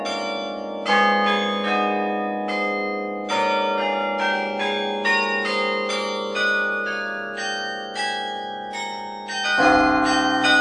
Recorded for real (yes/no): yes